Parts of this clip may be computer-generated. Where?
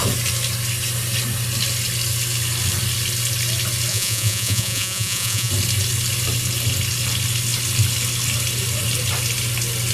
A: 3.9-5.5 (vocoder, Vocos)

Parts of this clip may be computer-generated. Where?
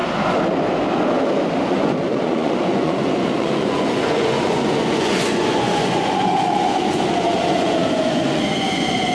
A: 1.7-9.1 (vocoder, Vocos)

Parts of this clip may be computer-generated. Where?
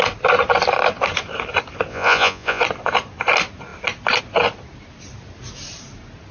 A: 1.9-2.6 (vocoder, Vocos)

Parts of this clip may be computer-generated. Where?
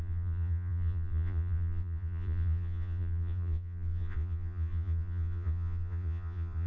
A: 0.0-6.7 (vocoder, Vocos)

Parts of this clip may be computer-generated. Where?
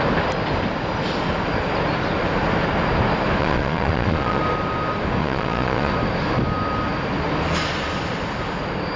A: 3.4-4.4 (vocoder, Vocos); 5.2-5.9